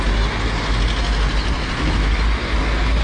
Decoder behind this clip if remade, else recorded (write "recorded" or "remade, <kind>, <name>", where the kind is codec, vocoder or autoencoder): recorded